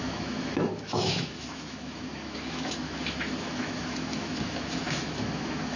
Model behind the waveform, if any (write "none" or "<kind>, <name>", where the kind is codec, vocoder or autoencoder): autoencoder, DAC-VAE